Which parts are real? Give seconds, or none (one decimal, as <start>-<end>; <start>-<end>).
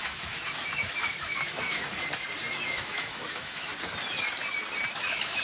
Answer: 1.9-2.5; 3.7-4.9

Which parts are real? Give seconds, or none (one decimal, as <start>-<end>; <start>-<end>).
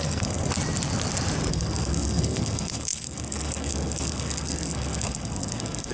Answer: 0.5-1.5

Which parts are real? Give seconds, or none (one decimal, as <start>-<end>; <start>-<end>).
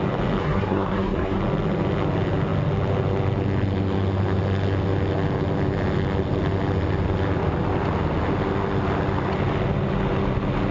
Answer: 0.0-0.4; 1.4-10.7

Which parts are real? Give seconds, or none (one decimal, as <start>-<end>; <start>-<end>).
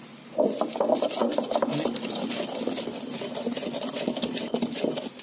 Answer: 0.0-5.2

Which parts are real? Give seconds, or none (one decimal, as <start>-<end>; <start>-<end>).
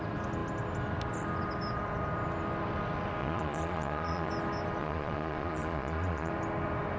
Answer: 0.0-3.2; 4.3-4.8; 6.3-7.0